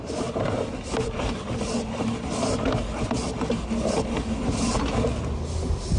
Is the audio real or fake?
real